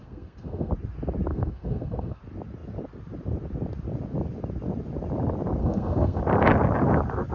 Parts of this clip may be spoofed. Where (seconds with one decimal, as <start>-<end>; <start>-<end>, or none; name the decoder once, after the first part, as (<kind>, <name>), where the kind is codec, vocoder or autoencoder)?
0.0-0.7 (codec, SNAC); 1.3-2.2; 5.6-6.2